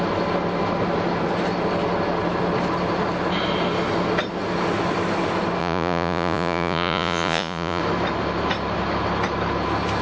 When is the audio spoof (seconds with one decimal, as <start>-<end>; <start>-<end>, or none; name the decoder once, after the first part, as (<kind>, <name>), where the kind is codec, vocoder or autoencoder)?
5.6-7.8 (vocoder, Vocos)